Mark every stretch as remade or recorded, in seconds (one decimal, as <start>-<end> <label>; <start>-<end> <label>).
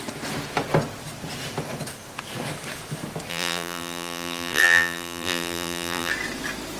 0.0-3.3 recorded; 3.3-6.1 remade; 6.1-6.8 recorded